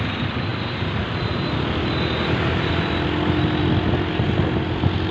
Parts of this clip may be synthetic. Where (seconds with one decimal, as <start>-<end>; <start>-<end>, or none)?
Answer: none